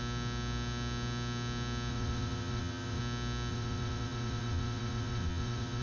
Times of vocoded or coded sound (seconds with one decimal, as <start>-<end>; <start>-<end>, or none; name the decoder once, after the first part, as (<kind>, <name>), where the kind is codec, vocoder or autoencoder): 1.9-3.0 (vocoder, WaveNeXt); 3.5-5.8